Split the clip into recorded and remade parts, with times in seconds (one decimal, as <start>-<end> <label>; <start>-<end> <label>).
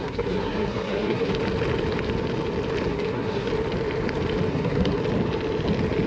0.0-1.3 remade; 1.3-2.9 recorded; 2.9-3.5 remade; 3.5-4.5 recorded; 4.5-5.0 remade; 5.0-6.1 recorded